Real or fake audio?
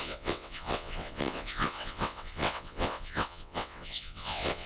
fake